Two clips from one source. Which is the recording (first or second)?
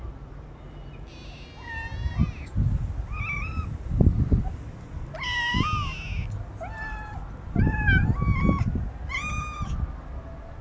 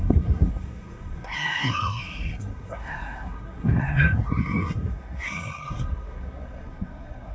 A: first